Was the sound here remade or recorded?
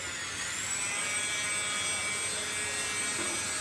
recorded